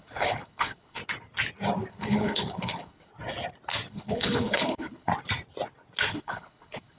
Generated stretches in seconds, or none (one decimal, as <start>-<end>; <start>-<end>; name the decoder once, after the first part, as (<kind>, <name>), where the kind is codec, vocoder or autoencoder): 0.0-1.0 (codec, HILCodec); 1.9-3.1; 3.9-5.1; 6.1-7.0